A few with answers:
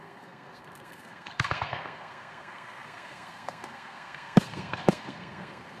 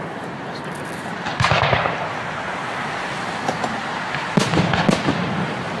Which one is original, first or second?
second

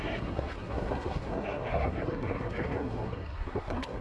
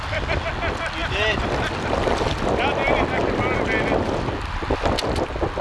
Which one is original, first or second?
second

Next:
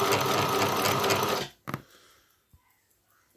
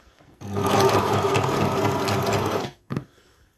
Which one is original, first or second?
first